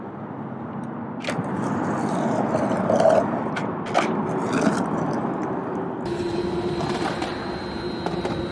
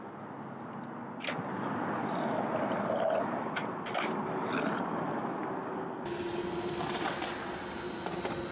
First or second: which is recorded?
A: second